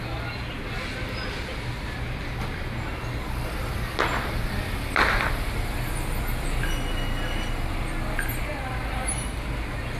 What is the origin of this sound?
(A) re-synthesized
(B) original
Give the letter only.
B